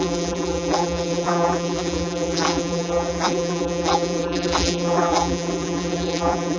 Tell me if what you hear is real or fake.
fake